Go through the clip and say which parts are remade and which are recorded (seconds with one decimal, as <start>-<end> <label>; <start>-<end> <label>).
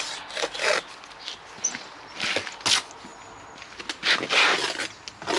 0.0-5.4 recorded